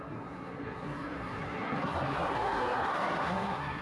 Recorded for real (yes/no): no